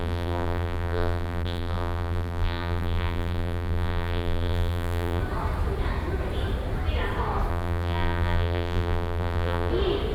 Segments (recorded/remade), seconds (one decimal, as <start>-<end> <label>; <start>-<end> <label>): 0.0-5.2 remade; 5.2-7.5 recorded; 7.5-9.7 remade; 9.7-10.1 recorded